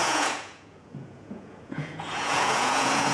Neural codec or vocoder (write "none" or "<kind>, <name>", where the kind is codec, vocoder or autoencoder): vocoder, Vocos